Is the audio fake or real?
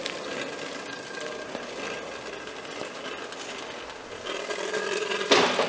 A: real